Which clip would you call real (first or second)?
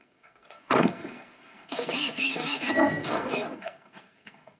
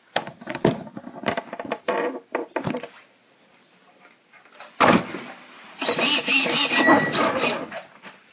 second